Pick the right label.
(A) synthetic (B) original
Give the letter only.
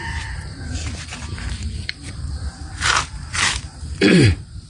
A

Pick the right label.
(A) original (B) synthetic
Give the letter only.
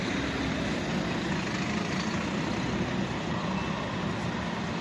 A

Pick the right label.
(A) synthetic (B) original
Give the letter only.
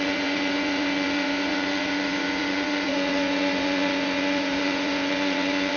A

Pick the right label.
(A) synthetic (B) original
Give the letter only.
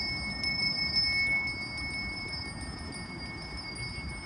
B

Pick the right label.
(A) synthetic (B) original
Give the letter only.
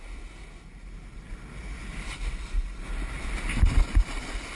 B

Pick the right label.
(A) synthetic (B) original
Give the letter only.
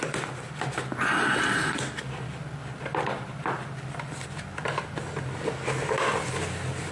B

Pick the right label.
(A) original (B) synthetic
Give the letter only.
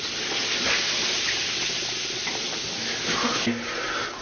A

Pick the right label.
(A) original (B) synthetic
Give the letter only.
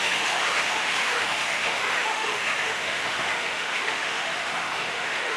B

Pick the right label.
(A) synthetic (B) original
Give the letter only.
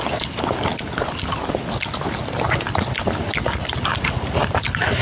B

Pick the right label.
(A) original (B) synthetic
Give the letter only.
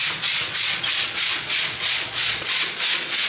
B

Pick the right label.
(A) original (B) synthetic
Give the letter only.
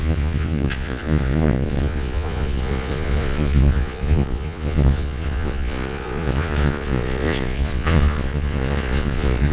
B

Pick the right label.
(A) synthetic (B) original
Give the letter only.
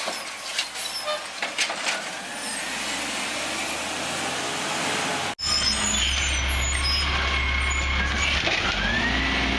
B